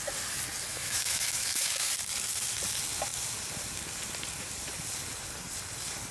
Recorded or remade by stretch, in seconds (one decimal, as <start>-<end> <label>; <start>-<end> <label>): 0.0-0.7 recorded; 0.7-1.9 remade; 1.9-6.1 recorded